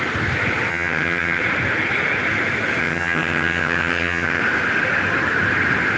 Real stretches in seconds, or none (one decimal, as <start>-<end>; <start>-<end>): 0.0-0.7; 1.4-2.8; 4.4-6.0